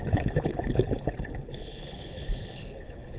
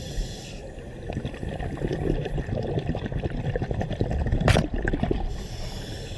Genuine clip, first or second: second